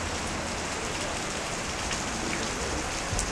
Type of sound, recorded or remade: recorded